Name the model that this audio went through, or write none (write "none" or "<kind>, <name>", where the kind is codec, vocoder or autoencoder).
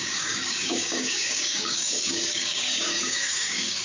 codec, DAC